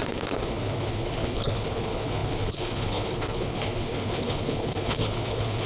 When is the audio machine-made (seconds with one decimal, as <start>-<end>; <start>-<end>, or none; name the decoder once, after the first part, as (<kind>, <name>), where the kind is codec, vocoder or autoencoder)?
0.0-5.7 (codec, HILCodec)